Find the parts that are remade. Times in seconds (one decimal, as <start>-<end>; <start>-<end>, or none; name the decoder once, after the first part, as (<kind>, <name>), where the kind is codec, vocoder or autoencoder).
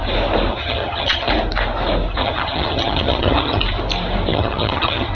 0.5-1.3 (vocoder, HiFi-GAN); 2.2-3.6; 4.3-5.1